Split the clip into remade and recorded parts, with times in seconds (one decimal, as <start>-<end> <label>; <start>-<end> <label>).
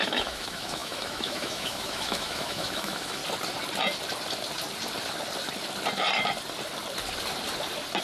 0.0-3.2 remade; 3.2-8.0 recorded